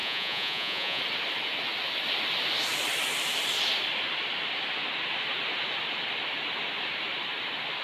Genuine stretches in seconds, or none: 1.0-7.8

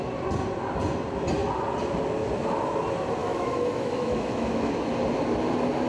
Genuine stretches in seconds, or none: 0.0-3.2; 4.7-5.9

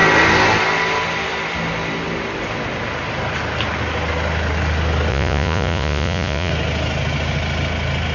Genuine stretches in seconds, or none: 0.0-5.1; 6.5-8.1

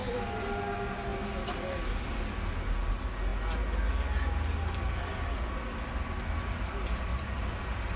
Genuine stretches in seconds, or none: 0.6-7.1; 7.6-8.0